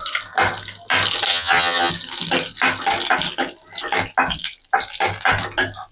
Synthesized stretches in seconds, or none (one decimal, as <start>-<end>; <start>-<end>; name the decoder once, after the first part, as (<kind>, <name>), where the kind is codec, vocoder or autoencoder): 1.3-1.9 (vocoder, HiFi-GAN)